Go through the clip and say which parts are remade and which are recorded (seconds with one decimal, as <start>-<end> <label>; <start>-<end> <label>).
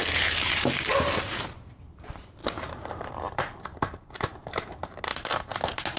0.0-2.4 recorded; 2.4-5.0 remade; 5.0-6.0 recorded